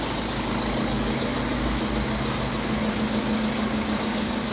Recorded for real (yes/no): yes